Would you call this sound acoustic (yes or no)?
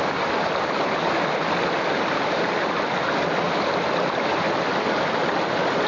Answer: yes